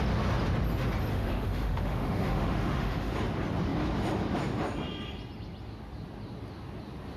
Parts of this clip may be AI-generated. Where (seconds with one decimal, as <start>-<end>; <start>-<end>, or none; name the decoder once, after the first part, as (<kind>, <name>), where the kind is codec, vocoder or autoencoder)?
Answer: 1.1-3.1 (autoencoder, DAC-VAE)